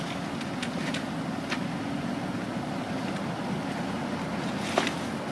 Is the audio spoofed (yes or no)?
no